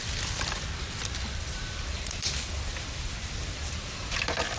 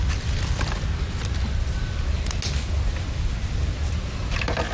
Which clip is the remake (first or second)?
first